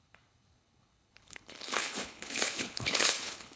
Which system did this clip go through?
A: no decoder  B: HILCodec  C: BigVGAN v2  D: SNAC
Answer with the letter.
B